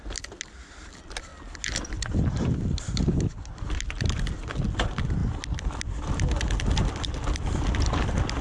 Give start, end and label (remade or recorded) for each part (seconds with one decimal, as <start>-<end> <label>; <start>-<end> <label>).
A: 0.0-1.3 remade; 1.3-2.8 recorded; 2.8-5.2 remade; 5.2-6.7 recorded; 6.7-8.4 remade